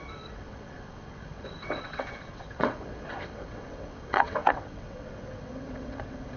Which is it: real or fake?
fake